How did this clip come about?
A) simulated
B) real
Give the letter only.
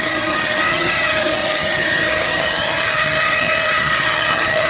A